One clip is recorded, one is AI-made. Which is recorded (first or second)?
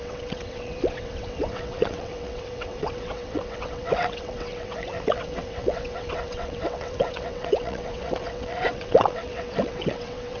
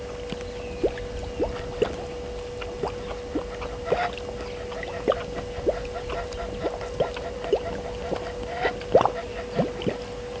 second